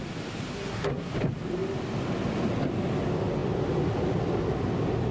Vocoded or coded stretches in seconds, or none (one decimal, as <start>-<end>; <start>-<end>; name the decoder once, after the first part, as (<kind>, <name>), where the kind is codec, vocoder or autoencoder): 0.5-1.1 (codec, SNAC)